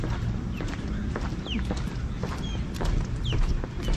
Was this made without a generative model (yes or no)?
yes